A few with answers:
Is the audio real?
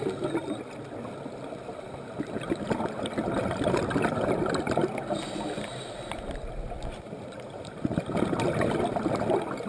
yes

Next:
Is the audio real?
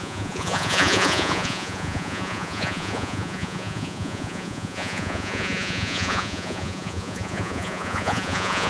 no